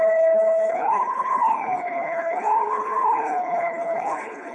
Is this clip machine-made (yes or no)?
yes